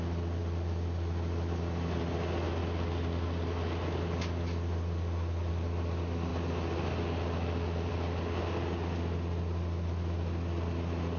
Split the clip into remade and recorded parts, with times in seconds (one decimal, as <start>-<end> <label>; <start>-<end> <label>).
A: 0.0-11.2 recorded